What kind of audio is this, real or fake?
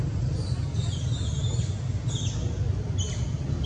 real